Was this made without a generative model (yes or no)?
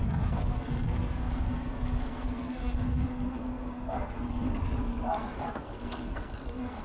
no